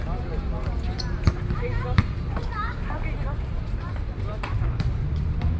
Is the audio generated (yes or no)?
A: yes